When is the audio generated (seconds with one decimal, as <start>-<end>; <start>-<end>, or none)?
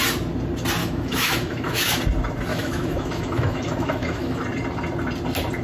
0.8-2.0; 2.5-4.4